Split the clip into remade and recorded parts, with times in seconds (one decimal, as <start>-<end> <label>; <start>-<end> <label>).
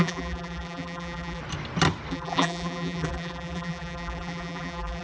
0.0-1.4 remade; 1.4-2.1 recorded; 2.1-5.0 remade